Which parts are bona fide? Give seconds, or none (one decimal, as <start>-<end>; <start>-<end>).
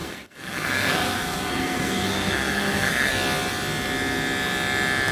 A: 3.1-5.1